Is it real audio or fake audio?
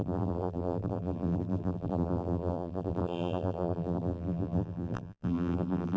fake